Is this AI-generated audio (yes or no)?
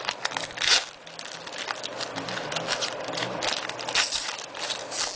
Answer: no